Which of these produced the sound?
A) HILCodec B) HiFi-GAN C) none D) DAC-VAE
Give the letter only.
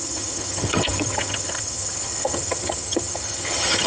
B